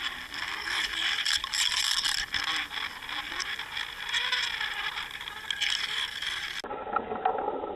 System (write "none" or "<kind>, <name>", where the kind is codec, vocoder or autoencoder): none